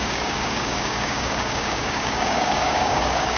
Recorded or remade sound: remade